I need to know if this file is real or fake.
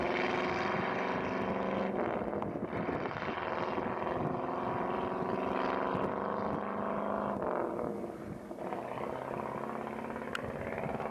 real